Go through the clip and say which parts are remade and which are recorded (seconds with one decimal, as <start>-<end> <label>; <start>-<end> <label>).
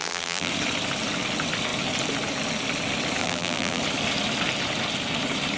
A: 0.0-0.5 remade; 0.5-3.2 recorded; 3.2-3.8 remade; 3.8-5.6 recorded